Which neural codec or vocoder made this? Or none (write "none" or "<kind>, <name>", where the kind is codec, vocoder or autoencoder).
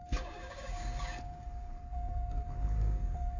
codec, DAC